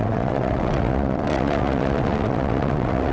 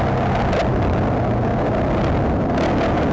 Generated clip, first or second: first